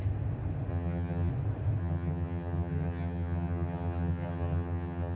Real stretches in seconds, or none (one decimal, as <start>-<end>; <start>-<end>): 0.0-0.7; 1.3-1.8